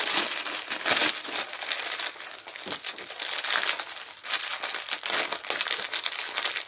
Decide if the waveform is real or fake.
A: real